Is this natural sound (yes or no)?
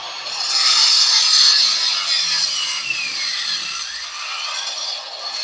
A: yes